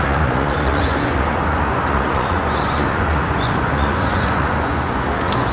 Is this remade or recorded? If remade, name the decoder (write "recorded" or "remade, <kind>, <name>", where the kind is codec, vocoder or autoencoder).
remade, vocoder, Vocos